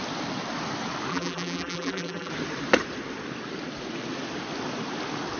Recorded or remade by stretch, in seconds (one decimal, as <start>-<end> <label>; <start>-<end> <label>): 0.0-1.1 recorded; 1.1-2.3 remade; 2.3-5.4 recorded